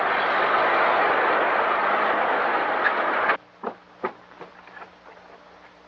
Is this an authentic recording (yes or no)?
yes